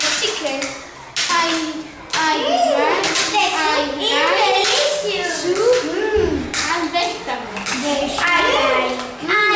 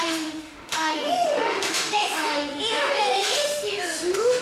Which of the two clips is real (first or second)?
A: first